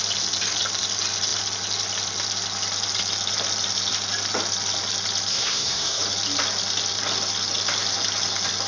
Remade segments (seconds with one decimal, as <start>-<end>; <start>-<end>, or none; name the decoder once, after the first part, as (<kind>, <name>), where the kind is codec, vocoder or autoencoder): 5.3-6.0 (codec, SNAC)